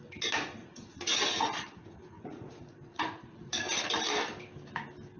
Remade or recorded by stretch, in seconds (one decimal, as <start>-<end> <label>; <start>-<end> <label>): 0.0-0.6 recorded; 0.6-3.5 remade; 3.5-5.2 recorded